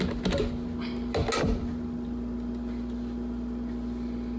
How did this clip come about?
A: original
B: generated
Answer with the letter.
A